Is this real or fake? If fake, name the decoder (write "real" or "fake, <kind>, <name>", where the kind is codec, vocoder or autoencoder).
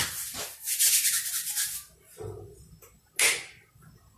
real